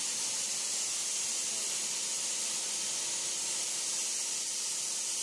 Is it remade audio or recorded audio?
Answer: recorded